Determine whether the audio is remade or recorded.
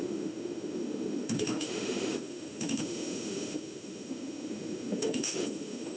remade